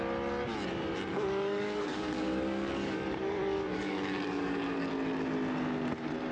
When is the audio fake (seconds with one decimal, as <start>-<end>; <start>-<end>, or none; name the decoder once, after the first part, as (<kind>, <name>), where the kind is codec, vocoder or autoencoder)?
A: 1.1-4.9 (codec, DAC)